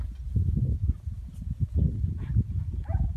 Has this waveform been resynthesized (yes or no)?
no